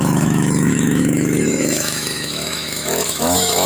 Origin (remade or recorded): remade